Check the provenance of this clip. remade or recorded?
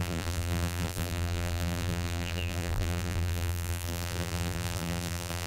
remade